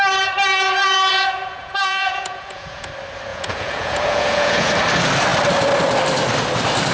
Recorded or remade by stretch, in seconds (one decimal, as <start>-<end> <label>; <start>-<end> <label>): 0.0-1.1 recorded; 1.1-2.9 remade; 2.9-3.3 recorded; 3.3-4.7 remade; 4.7-6.9 recorded